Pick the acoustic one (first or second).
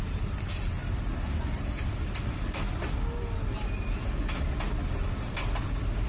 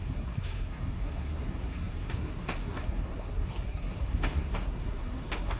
first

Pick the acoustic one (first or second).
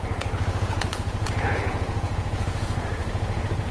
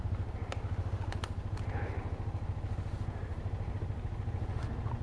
second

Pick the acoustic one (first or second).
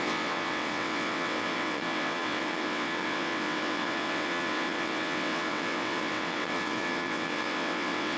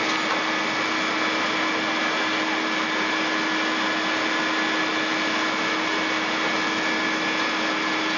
second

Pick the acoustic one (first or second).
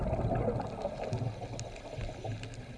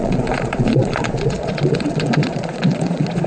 first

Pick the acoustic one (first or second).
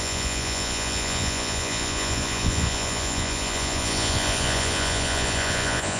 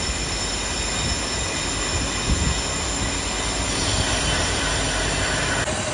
second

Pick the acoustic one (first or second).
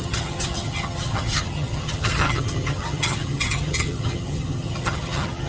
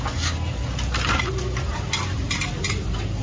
second